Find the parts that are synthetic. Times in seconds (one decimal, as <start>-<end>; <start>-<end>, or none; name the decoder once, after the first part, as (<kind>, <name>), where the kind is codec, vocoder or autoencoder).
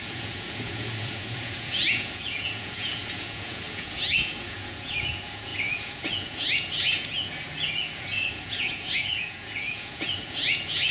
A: 0.0-10.9 (vocoder, Vocos)